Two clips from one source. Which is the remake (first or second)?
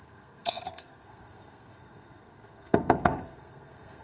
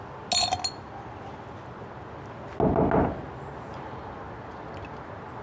first